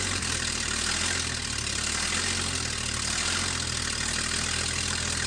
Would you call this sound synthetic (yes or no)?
no